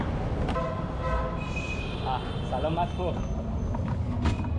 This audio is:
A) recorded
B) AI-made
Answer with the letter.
A